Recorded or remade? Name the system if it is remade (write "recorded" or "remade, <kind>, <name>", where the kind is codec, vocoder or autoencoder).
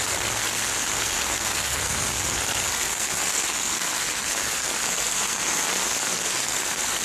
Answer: remade, codec, SNAC